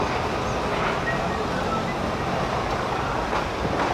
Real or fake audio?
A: real